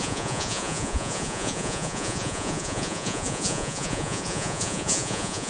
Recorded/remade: remade